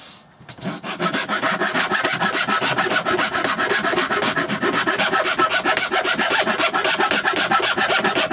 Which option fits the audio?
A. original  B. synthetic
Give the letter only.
A